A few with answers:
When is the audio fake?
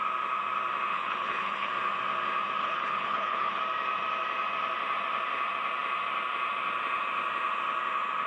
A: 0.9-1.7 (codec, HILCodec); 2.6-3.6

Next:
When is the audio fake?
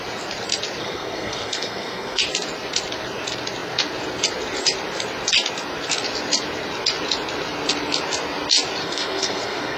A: 0.8-2.2 (codec, SNAC); 8.8-9.8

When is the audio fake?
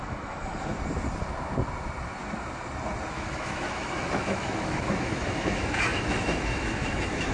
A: 0.0-0.7 (autoencoder, DAC-VAE); 3.1-7.3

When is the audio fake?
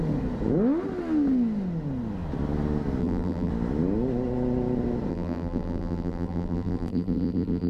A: 3.0-3.5 (vocoder, BigVGAN v2); 5.1-7.7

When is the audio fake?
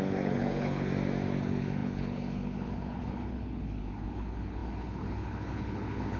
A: 0.0-0.9 (codec, HILCodec); 1.4-6.2